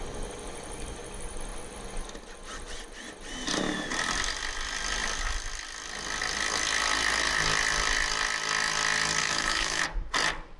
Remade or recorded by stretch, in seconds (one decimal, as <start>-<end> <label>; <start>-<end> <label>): 0.0-9.2 recorded; 9.2-9.8 remade; 9.8-10.6 recorded